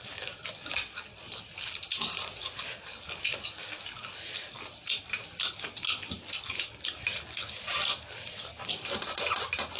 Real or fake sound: real